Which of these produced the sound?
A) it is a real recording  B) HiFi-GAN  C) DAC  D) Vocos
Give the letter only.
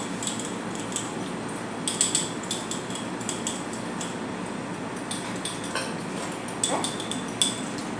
A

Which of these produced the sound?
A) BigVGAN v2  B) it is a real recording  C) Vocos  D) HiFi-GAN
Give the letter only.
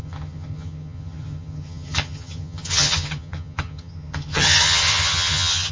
D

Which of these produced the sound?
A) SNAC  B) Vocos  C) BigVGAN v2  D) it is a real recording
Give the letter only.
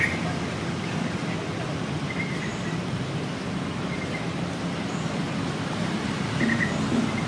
D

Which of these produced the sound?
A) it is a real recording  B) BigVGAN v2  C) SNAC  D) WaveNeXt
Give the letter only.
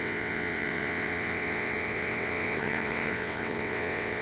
D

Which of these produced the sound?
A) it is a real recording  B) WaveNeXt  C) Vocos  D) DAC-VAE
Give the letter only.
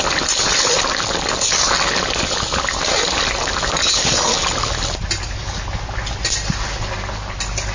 A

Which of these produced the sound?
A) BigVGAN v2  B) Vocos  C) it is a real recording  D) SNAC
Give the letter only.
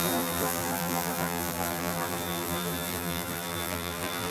A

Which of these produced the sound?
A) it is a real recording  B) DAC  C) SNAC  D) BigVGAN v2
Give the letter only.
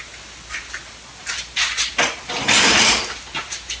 A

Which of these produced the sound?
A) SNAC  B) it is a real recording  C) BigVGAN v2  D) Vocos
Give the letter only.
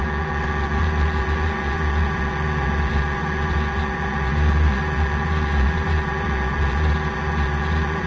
D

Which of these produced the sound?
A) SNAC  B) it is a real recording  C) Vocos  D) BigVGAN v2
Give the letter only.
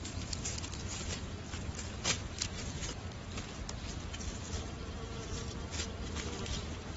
B